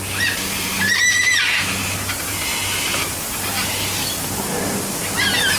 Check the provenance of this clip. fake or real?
real